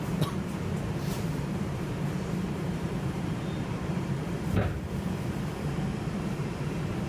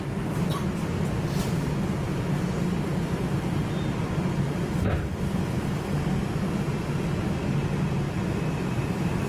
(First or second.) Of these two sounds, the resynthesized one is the first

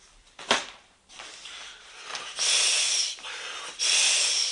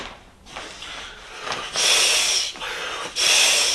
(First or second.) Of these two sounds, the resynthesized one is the first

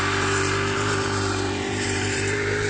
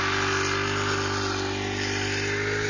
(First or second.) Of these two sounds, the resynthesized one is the first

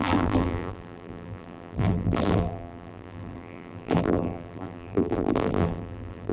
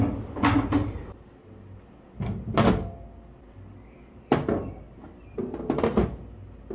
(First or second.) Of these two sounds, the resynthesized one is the first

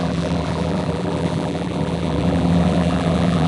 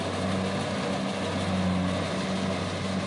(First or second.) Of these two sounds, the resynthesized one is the first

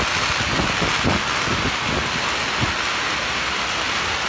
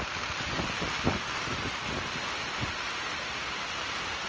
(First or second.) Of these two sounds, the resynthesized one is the second